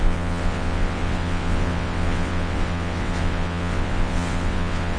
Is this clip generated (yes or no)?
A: yes